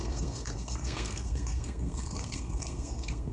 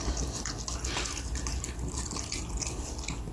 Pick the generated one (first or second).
first